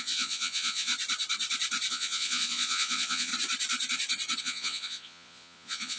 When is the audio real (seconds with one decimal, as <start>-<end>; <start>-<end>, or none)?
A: 0.9-1.9; 3.3-4.4